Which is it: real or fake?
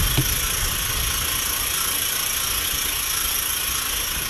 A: real